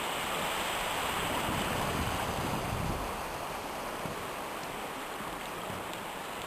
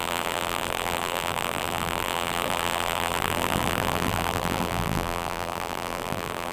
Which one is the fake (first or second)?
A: second